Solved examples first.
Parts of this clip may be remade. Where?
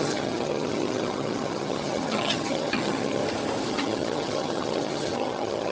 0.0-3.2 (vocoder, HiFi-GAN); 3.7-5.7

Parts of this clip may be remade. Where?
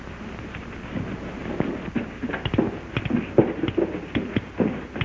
none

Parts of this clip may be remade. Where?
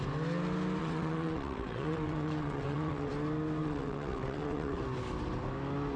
0.8-3.1 (vocoder, WaveNeXt); 3.6-4.8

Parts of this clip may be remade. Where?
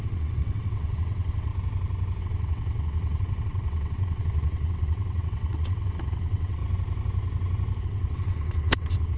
0.0-1.5 (vocoder, WaveNeXt); 2.2-6.6; 7.8-9.2